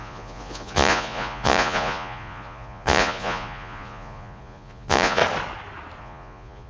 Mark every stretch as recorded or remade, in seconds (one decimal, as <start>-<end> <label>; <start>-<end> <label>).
0.0-5.2 remade; 5.2-6.0 recorded; 6.0-6.7 remade